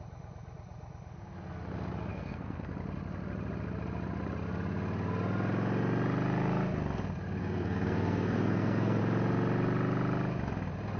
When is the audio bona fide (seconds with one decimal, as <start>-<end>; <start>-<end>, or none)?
0.0-2.1; 2.7-7.4; 9.0-11.0